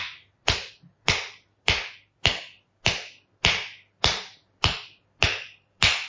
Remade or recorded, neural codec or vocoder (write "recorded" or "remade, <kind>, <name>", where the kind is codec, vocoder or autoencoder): recorded